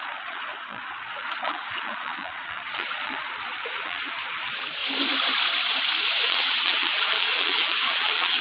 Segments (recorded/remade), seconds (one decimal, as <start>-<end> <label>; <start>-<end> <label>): 0.0-4.8 remade; 4.8-6.2 recorded; 6.2-8.4 remade